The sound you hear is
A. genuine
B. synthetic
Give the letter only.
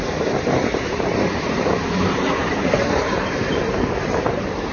B